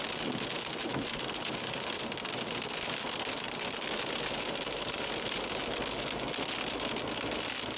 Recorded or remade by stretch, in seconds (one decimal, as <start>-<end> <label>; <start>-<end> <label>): 0.0-7.8 recorded